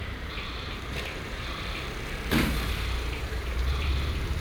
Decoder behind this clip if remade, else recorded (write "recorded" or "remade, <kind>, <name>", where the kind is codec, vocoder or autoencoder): remade, vocoder, BigVGAN v2